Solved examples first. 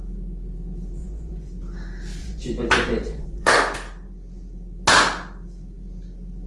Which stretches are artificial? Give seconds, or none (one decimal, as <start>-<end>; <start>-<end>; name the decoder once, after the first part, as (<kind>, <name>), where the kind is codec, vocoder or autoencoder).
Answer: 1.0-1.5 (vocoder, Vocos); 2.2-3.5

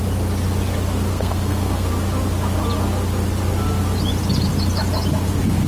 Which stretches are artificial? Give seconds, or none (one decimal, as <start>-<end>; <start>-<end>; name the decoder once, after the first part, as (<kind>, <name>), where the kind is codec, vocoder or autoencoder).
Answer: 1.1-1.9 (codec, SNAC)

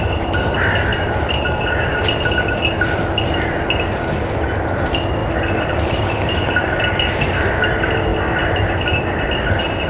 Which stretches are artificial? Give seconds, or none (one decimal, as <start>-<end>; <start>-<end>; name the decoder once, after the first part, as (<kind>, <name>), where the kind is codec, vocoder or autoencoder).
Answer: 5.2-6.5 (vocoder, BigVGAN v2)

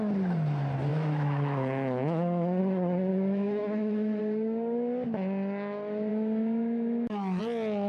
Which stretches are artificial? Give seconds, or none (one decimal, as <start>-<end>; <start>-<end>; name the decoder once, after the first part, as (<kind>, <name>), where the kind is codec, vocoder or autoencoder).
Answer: 0.9-2.6 (autoencoder, DAC-VAE); 3.1-4.2; 6.1-7.4

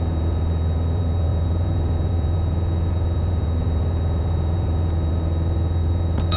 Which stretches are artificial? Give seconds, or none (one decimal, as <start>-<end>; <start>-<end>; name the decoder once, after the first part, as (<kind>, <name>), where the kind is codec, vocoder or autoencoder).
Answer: 0.0-6.4 (vocoder, Vocos)

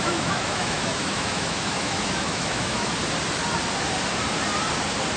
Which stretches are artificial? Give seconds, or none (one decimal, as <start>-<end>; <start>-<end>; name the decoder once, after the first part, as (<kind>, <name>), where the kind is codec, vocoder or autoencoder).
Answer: 0.0-3.0 (autoencoder, DAC-VAE)

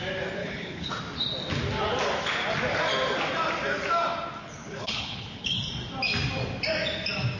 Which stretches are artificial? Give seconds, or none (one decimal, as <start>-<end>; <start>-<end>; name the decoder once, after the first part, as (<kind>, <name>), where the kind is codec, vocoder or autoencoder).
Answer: 0.4-0.9 (codec, HILCodec); 4.4-5.7

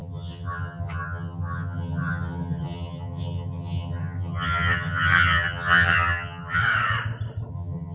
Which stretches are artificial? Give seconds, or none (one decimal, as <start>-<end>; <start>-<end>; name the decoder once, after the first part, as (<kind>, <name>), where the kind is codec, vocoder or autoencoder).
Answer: 0.0-6.6 (vocoder, HiFi-GAN); 7.5-7.9